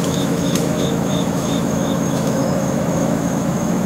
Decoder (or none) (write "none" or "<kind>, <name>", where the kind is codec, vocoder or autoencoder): autoencoder, DAC-VAE